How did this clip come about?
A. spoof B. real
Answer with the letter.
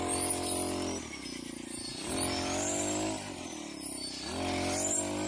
B